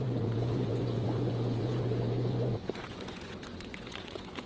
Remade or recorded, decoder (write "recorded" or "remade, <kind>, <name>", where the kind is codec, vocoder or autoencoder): remade, vocoder, Vocos